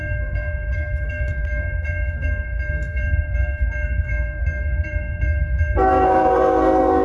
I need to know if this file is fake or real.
fake